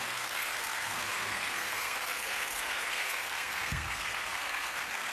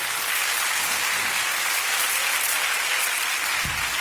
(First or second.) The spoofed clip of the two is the first